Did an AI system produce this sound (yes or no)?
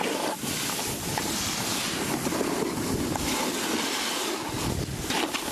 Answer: no